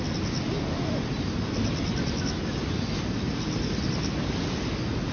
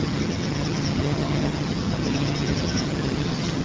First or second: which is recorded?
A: first